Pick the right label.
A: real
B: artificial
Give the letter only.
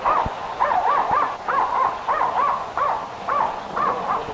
B